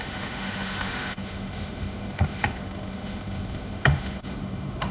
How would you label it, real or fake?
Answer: fake